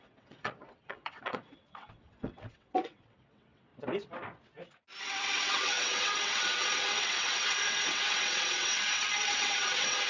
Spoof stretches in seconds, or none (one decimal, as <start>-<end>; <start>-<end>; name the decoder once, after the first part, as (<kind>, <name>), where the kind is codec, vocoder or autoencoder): 0.0-3.7 (vocoder, WaveNeXt); 5.0-10.1